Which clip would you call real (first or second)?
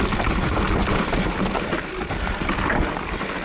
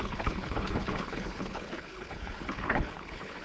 first